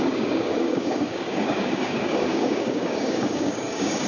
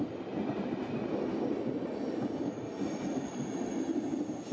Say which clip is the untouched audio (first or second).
second